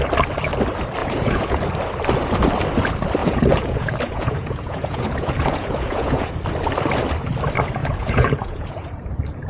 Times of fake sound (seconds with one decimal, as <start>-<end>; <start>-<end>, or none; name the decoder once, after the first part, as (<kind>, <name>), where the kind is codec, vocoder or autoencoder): 1.0-1.6 (vocoder, Vocos); 3.2-6.3; 7.8-8.9